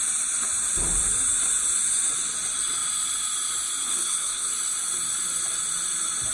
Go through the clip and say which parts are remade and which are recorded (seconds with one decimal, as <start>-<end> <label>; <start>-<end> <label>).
0.0-3.9 recorded; 3.9-4.5 remade; 4.5-6.3 recorded